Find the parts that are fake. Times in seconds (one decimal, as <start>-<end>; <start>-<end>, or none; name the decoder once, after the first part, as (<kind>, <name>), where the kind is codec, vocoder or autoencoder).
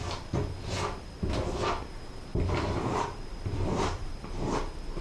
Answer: 2.3-4.1 (vocoder, BigVGAN v2)